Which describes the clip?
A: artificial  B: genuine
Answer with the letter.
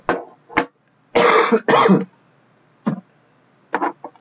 B